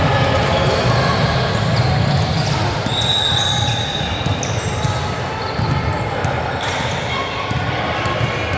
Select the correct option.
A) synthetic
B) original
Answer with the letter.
B